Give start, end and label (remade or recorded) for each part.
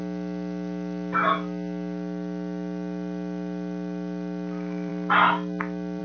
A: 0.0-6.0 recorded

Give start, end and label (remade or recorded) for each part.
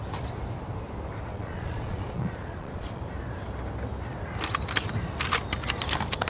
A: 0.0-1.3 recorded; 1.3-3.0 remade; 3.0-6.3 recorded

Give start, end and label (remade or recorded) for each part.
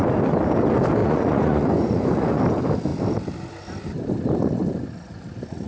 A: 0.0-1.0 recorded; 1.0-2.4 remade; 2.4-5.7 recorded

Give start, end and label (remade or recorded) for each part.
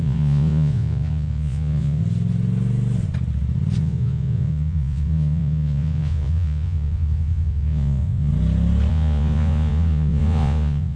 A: 0.0-2.0 remade; 2.0-3.8 recorded; 3.8-8.3 remade; 8.3-8.9 recorded; 8.9-11.0 remade